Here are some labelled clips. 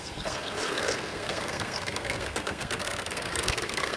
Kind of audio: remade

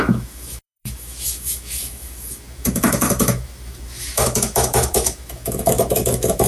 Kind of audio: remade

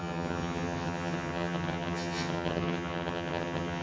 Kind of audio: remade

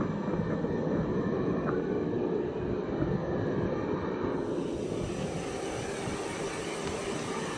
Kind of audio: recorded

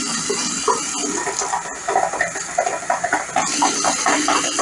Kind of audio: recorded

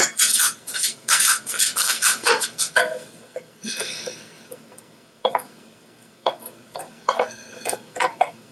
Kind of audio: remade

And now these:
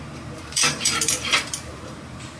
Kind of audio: remade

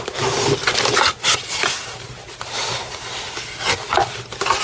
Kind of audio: recorded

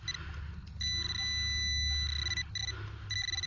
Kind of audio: recorded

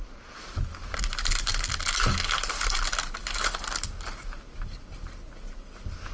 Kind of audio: recorded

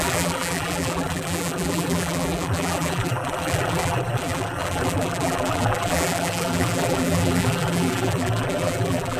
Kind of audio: remade